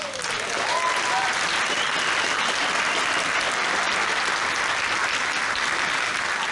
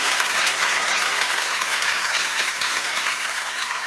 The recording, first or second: first